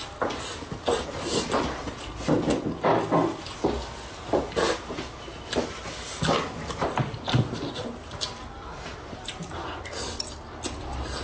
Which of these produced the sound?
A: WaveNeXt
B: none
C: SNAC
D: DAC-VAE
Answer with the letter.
B